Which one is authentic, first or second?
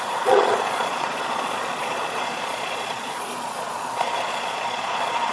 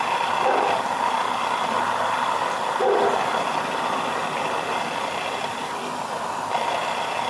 second